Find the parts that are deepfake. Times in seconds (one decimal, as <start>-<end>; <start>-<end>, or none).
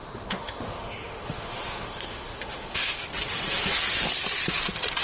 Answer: 0.0-3.0